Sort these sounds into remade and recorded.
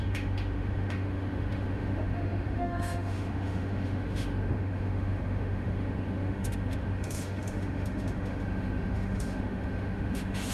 remade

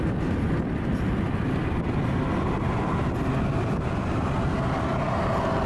recorded